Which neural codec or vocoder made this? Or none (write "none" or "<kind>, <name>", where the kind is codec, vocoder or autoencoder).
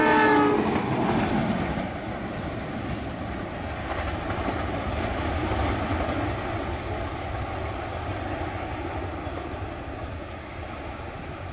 none